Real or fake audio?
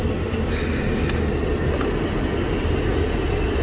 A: real